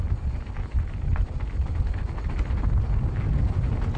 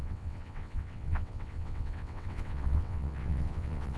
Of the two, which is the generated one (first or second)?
second